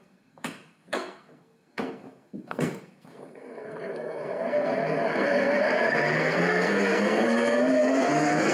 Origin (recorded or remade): remade